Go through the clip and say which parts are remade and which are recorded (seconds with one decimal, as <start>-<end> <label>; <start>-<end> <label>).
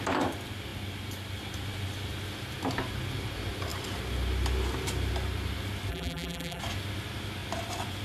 0.0-5.9 recorded; 5.9-6.6 remade; 6.6-8.0 recorded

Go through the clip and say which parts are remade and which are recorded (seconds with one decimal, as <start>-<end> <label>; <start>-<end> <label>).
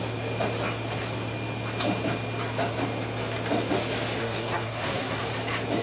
0.0-4.2 recorded; 4.2-5.2 remade; 5.2-5.8 recorded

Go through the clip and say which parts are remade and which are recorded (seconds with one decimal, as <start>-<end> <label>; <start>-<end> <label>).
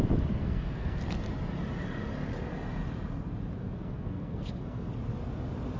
0.0-0.4 recorded; 0.4-1.0 remade; 1.0-3.6 recorded; 3.6-4.9 remade; 4.9-5.8 recorded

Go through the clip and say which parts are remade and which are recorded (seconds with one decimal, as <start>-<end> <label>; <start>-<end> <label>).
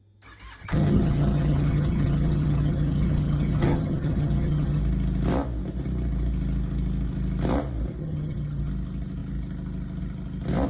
0.0-0.6 recorded; 0.6-4.8 remade; 4.8-8.0 recorded; 8.0-8.7 remade; 8.7-10.7 recorded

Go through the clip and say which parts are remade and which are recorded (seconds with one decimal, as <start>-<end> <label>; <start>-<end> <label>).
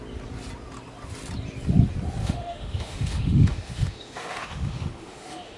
0.0-2.2 recorded; 2.2-5.6 remade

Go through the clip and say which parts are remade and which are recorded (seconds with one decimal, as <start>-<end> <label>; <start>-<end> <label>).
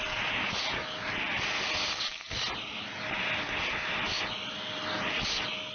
0.0-5.7 recorded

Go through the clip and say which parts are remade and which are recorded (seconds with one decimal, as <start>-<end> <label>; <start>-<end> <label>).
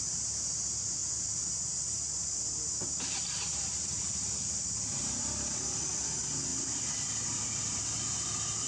0.0-3.3 recorded; 3.3-3.8 remade; 3.8-6.5 recorded; 6.5-7.8 remade; 7.8-8.7 recorded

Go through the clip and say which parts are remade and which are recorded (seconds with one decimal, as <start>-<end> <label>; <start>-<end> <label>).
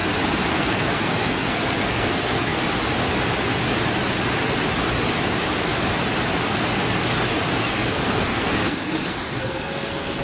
0.0-0.5 recorded; 0.5-2.6 remade; 2.6-7.6 recorded; 7.6-10.2 remade